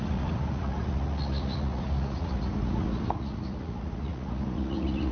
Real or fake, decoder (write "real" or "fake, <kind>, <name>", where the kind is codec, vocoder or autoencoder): fake, vocoder, Vocos